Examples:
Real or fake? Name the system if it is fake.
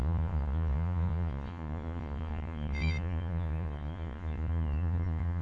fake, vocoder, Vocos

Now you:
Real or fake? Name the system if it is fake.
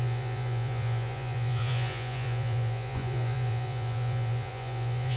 fake, vocoder, Vocos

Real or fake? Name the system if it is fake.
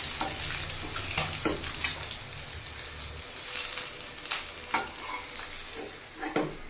real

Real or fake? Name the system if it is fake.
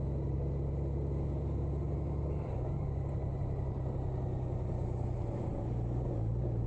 real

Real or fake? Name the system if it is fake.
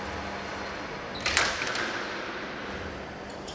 real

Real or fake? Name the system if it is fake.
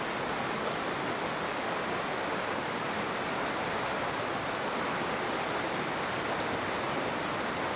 real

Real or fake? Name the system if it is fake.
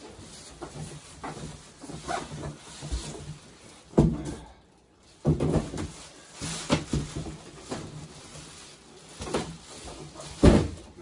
real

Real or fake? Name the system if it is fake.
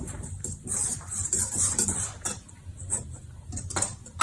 real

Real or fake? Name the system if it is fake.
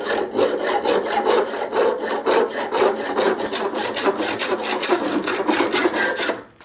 real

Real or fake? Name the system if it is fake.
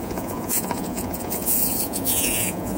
fake, vocoder, Vocos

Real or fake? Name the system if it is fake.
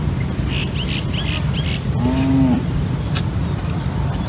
real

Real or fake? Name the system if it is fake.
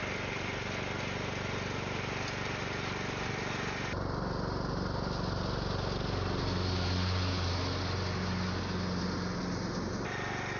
real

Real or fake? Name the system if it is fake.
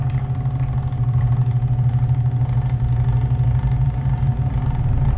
real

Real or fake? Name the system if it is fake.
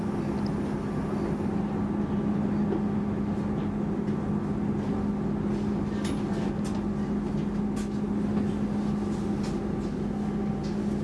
real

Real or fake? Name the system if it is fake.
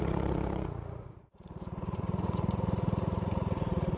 fake, vocoder, Vocos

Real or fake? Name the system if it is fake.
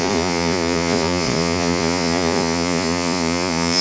fake, vocoder, Vocos